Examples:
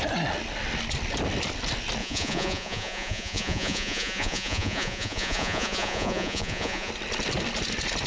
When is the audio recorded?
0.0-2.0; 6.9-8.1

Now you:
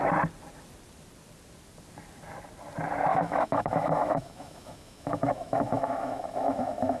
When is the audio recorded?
0.0-3.1

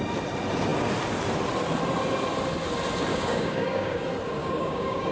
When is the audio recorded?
0.0-3.1; 4.0-4.4

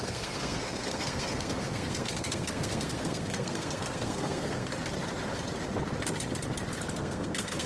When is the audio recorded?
4.7-6.9

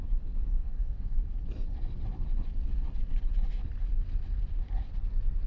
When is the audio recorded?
0.0-0.6; 1.4-5.5

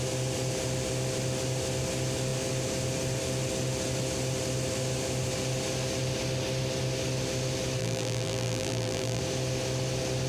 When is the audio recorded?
0.0-7.8; 9.2-10.3

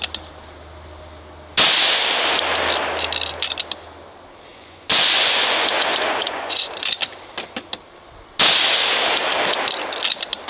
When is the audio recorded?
0.0-4.5; 6.7-10.5